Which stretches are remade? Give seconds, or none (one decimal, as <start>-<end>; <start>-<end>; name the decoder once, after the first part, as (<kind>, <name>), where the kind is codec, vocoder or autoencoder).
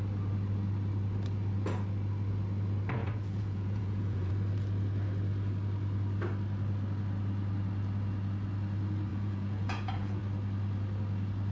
3.0-4.3 (vocoder, Vocos); 9.1-10.2